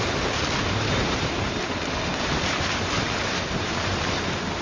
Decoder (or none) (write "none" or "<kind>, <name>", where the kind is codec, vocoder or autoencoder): vocoder, BigVGAN v2